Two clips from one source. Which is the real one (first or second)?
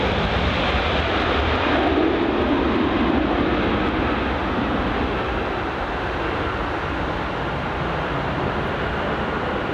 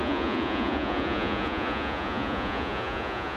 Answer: first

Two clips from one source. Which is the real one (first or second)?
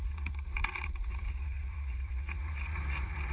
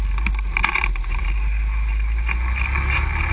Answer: second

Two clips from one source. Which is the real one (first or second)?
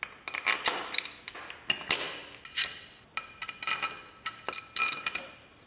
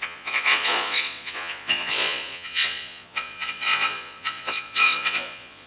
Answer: first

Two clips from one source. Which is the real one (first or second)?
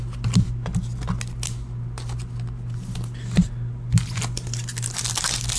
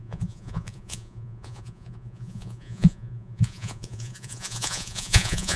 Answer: first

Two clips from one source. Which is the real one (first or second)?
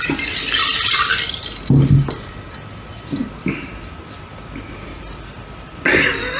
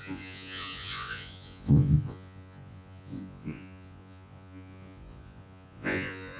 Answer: first